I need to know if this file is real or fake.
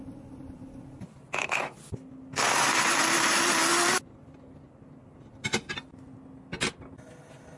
real